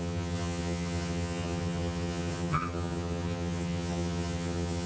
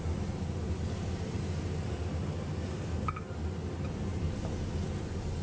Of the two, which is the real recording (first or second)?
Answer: second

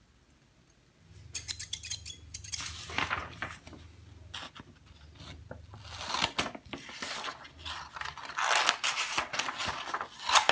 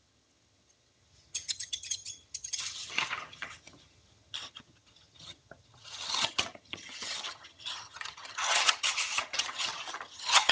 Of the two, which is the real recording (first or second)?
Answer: first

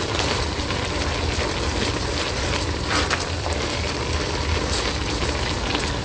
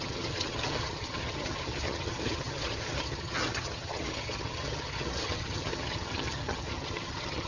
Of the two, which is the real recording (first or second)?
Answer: first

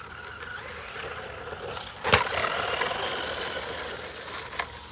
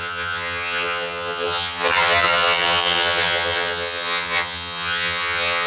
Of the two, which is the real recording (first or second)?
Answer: first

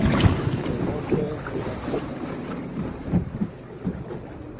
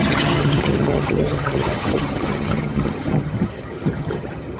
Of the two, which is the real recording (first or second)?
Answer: first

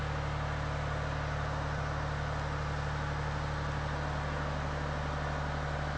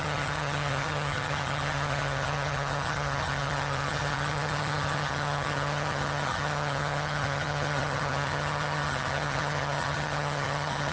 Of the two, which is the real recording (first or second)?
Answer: first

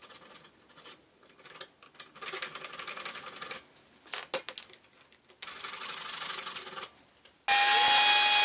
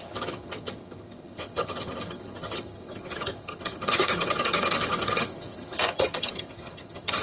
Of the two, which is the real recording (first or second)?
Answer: first